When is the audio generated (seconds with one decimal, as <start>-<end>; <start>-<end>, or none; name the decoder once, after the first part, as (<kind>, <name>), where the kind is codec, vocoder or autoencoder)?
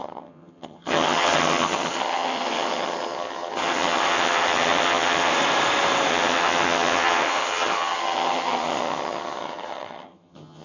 0.0-5.3 (vocoder, HiFi-GAN); 6.1-10.6